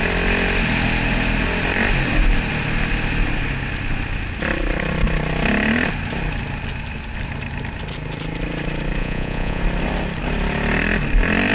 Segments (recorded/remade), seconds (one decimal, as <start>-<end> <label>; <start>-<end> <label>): 0.0-9.0 recorded; 9.0-9.6 remade; 9.6-11.5 recorded